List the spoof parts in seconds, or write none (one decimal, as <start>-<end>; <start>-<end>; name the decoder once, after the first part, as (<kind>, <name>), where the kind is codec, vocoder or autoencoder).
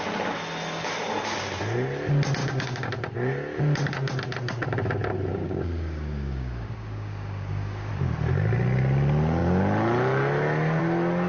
2.4-2.9 (codec, DAC); 5.3-7.9